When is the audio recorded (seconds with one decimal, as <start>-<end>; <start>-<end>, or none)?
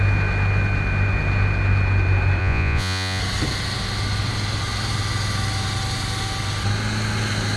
0.0-2.4; 3.2-7.6